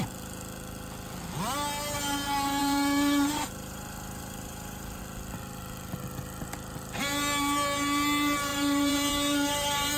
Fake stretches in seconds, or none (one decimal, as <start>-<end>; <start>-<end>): 2.6-5.0; 8.5-10.0